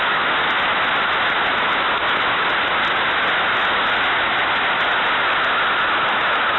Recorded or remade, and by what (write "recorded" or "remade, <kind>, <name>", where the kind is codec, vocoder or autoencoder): recorded